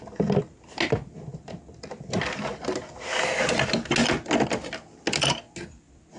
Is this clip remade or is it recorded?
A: recorded